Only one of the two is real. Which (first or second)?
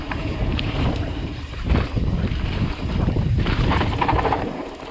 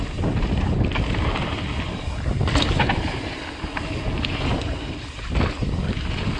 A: second